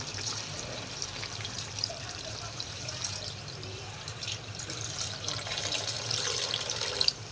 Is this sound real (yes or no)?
no